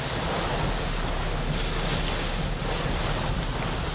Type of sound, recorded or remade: recorded